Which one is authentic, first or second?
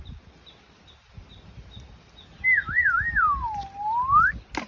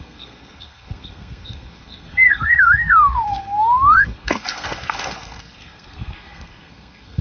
first